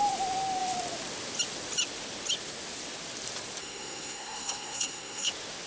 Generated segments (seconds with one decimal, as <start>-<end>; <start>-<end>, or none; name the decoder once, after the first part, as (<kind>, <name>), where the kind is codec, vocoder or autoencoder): 3.6-5.3 (codec, SNAC)